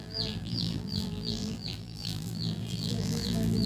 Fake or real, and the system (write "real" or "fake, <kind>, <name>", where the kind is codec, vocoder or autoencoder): fake, vocoder, BigVGAN v2